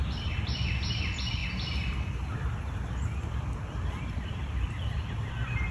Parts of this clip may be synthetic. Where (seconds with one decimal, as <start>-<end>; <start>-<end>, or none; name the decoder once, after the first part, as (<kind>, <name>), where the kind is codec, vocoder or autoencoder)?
0.0-1.4 (vocoder, BigVGAN v2); 3.6-5.7